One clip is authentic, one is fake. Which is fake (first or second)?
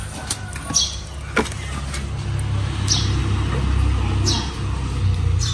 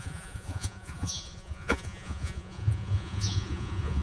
second